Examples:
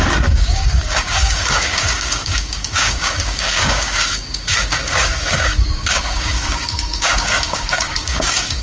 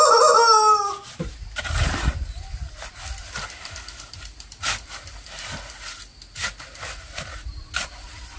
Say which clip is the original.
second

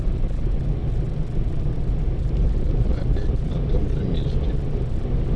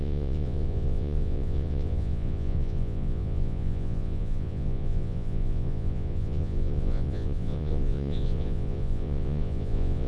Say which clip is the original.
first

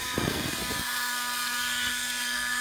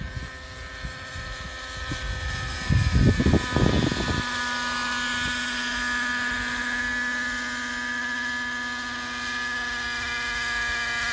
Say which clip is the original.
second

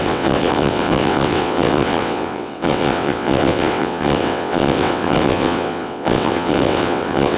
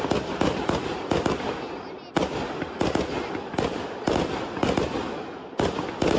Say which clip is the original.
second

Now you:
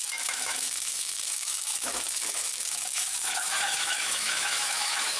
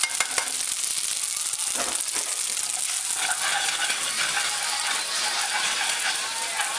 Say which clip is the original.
second